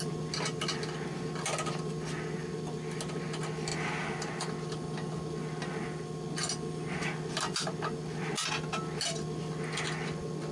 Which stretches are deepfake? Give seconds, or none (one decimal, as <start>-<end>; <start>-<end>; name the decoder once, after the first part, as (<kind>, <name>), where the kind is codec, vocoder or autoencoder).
none